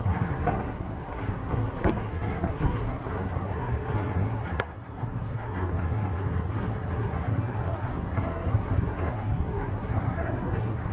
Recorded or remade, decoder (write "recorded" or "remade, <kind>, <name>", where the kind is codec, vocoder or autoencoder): remade, codec, SNAC